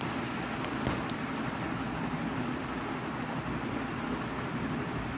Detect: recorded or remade recorded